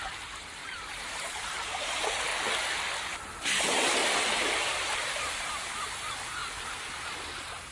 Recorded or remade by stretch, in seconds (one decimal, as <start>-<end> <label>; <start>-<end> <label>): 0.0-2.3 remade; 2.3-3.0 recorded; 3.0-4.0 remade; 4.0-5.1 recorded; 5.1-7.7 remade